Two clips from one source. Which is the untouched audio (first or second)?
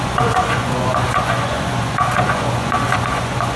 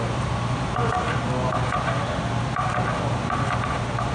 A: second